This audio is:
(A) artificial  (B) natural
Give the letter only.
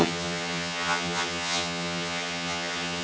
A